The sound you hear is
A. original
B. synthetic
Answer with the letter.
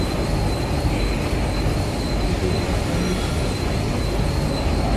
A